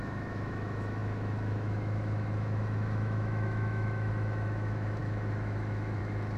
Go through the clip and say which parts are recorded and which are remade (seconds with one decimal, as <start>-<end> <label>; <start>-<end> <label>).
0.0-6.4 remade